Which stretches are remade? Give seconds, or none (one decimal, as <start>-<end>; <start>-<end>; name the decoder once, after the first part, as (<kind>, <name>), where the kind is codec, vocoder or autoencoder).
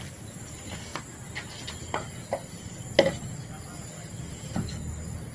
0.9-2.7 (vocoder, BigVGAN v2)